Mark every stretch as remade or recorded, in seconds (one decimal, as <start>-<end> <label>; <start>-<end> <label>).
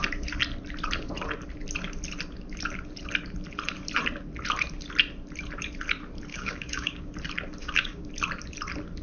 0.0-6.3 recorded; 6.3-7.1 remade; 7.1-7.6 recorded; 7.6-8.1 remade; 8.1-9.0 recorded